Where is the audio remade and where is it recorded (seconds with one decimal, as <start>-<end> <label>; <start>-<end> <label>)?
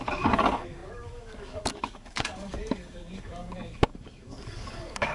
0.0-5.1 remade